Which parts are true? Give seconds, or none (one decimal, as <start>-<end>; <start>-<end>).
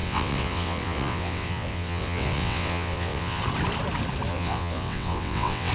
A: 3.4-4.3